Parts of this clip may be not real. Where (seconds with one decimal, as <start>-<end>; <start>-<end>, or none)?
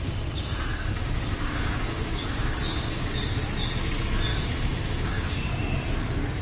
0.7-3.4; 4.3-5.4